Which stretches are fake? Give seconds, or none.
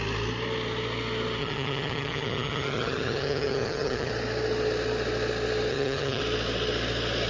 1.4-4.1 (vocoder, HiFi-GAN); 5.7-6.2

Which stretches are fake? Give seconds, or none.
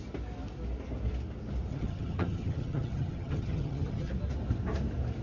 1.7-4.1 (vocoder, HiFi-GAN)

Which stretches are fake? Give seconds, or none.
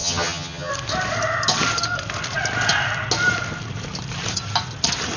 0.0-0.7 (vocoder, HiFi-GAN)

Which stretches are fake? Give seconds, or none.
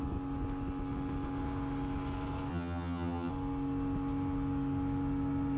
2.5-3.3 (vocoder, HiFi-GAN)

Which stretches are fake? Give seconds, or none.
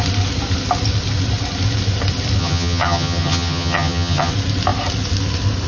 2.4-4.3 (vocoder, HiFi-GAN)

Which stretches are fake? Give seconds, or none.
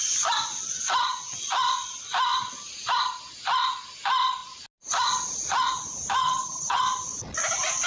6.2-6.8 (vocoder, HiFi-GAN)